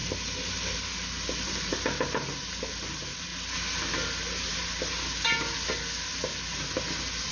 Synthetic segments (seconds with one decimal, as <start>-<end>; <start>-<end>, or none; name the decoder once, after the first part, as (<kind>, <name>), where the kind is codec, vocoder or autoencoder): none